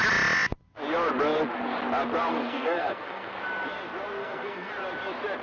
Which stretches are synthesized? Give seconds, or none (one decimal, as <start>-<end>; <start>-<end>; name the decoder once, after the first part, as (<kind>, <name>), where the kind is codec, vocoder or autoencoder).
2.3-3.3 (codec, SNAC); 4.2-4.7